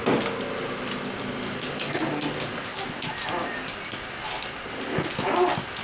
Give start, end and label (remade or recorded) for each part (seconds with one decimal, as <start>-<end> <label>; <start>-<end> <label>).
0.0-5.8 recorded